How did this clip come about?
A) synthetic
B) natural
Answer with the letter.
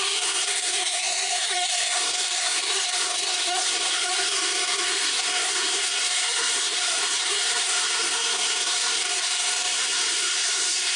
A